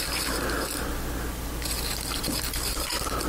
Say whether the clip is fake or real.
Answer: real